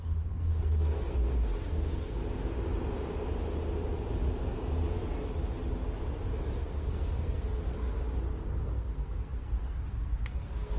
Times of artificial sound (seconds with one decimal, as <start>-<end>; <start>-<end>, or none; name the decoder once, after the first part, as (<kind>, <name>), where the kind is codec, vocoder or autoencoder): 0.0-2.2 (codec, SNAC); 6.6-8.0; 8.6-10.8